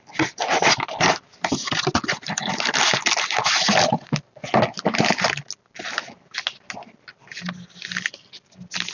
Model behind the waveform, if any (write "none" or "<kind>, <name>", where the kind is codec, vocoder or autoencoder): none